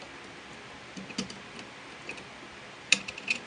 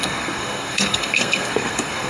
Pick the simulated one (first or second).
second